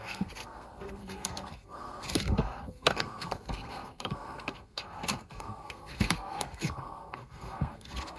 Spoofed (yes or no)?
yes